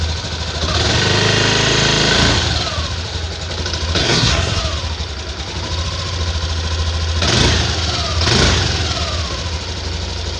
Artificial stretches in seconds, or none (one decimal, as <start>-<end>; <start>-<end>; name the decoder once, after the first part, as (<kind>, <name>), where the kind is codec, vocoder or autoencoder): 4.0-4.6 (codec, SNAC)